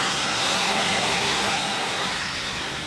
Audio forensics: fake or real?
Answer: fake